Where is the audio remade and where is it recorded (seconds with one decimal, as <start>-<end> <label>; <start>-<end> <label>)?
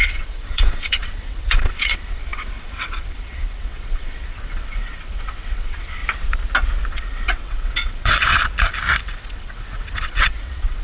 0.0-6.0 remade; 6.0-6.9 recorded; 6.9-8.3 remade; 8.3-9.0 recorded; 9.0-10.8 remade